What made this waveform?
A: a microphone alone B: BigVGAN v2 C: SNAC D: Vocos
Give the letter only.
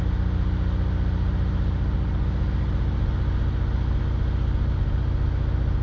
A